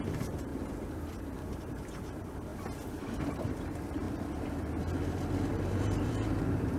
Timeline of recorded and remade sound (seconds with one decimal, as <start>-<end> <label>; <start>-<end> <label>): 0.0-0.5 remade; 0.5-1.2 recorded; 1.2-2.5 remade; 2.5-3.5 recorded; 3.5-4.0 remade; 4.0-5.5 recorded; 5.5-6.8 remade